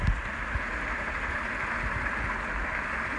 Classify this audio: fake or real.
real